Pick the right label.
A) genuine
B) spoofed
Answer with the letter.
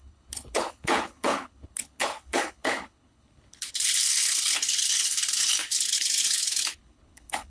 B